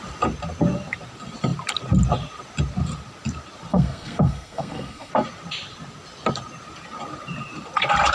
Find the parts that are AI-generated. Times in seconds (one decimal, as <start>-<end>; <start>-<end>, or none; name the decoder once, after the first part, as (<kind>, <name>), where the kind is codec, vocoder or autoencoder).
3.7-5.1 (codec, SNAC)